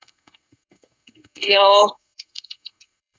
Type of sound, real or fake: fake